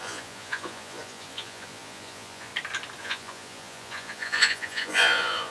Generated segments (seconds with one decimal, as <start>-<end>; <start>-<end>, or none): 0.0-2.5; 3.0-5.5